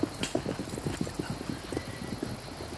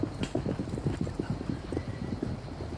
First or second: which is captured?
first